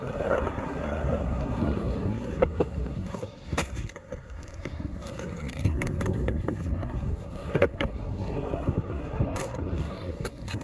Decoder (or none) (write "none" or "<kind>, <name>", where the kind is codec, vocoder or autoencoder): codec, SNAC